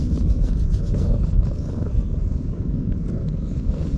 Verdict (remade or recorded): remade